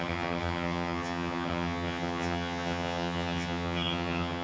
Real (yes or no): no